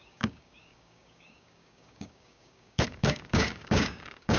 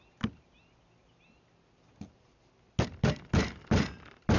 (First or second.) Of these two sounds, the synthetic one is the first